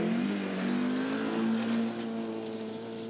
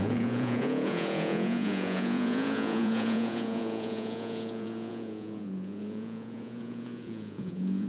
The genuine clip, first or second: first